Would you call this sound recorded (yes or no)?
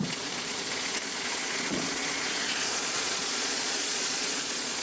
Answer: no